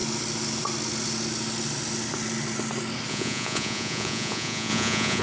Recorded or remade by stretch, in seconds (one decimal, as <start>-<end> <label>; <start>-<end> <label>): 0.0-3.1 recorded; 3.1-5.2 remade